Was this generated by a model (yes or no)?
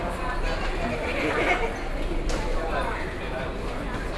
no